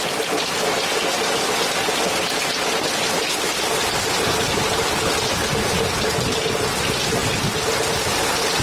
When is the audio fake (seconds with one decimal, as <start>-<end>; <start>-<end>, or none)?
none

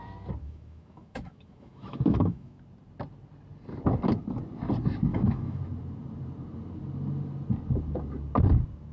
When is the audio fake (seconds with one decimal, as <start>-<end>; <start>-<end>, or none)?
0.4-2.6; 5.1-5.6

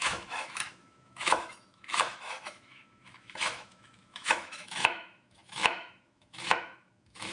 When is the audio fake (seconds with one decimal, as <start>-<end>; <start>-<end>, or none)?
0.0-7.3